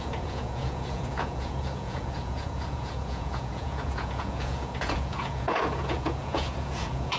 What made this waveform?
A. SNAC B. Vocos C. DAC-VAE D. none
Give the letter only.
B